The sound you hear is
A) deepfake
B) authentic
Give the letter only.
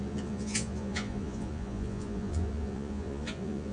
A